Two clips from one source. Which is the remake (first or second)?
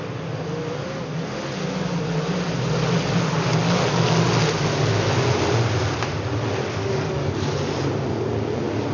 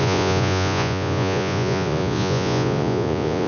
second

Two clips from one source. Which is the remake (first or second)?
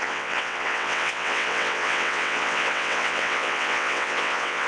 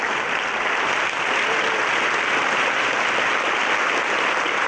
first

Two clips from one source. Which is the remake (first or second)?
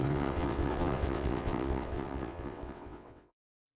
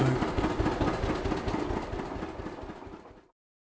first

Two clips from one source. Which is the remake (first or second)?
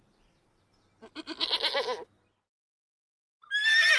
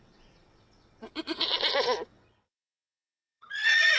second